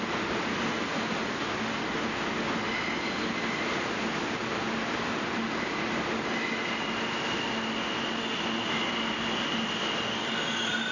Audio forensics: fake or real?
real